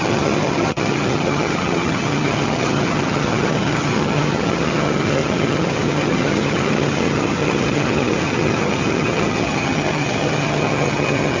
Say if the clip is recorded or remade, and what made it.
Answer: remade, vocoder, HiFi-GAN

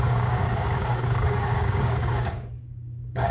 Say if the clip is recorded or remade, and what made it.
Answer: remade, codec, DAC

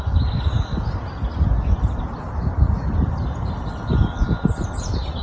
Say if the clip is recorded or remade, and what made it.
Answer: recorded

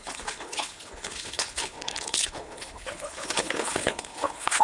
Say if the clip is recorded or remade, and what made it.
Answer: remade, codec, HILCodec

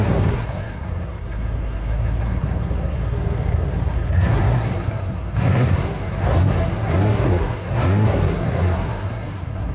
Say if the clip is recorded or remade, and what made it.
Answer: remade, codec, SNAC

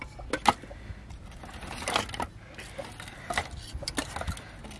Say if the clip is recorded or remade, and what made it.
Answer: recorded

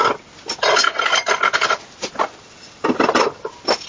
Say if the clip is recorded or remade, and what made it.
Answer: recorded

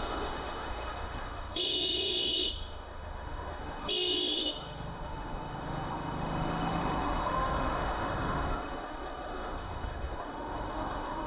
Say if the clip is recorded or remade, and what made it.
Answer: remade, autoencoder, DAC-VAE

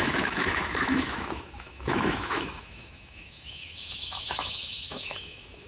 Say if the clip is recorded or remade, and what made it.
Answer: remade, autoencoder, DAC-VAE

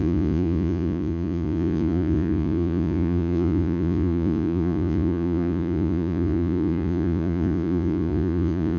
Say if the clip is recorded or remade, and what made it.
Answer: remade, vocoder, Vocos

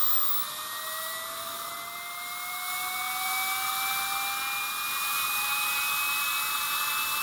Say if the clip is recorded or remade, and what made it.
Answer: recorded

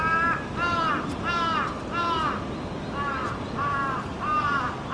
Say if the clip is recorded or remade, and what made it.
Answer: recorded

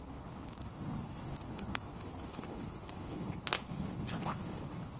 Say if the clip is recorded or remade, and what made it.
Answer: remade, codec, HILCodec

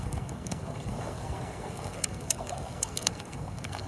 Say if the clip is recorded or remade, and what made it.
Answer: remade, codec, SNAC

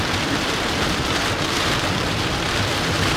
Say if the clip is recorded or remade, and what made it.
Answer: remade, vocoder, BigVGAN v2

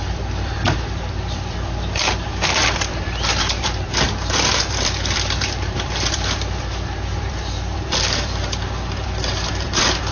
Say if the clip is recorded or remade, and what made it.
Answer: remade, vocoder, BigVGAN v2